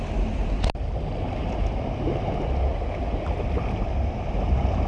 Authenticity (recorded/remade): recorded